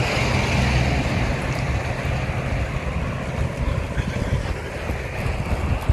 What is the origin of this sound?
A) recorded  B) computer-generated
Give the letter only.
A